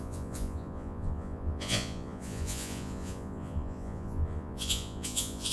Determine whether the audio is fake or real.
fake